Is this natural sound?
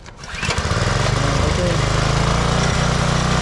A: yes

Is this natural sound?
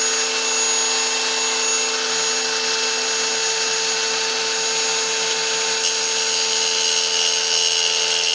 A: yes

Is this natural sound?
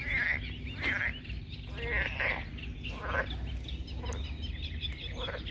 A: yes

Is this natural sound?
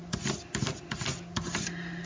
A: yes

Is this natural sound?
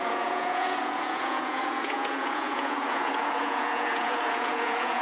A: no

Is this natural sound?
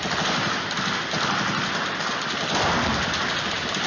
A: yes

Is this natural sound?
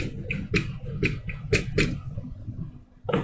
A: yes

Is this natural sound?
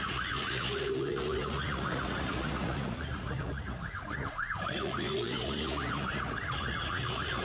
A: no